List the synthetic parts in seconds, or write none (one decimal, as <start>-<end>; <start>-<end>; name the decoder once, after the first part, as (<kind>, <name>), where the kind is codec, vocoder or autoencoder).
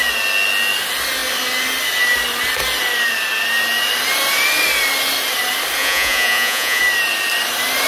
5.8-6.8 (vocoder, Vocos)